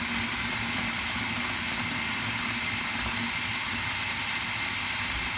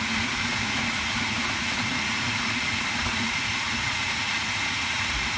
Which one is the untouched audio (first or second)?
first